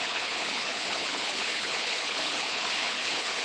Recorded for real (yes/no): no